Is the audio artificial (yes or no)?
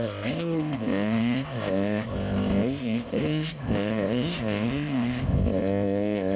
yes